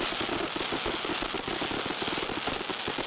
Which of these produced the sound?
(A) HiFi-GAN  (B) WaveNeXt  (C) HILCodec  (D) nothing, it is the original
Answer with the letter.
D